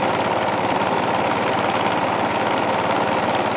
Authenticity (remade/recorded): recorded